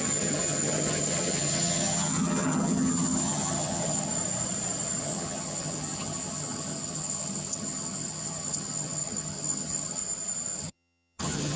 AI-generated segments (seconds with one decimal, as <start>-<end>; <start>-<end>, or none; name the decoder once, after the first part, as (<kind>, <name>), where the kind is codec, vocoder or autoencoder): 0.0-4.1 (vocoder, HiFi-GAN); 5.0-10.0; 10.6-11.6